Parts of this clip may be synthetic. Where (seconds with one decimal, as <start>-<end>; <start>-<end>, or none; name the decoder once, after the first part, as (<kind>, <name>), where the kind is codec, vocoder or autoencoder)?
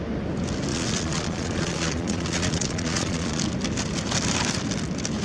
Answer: 0.7-3.4 (vocoder, Vocos)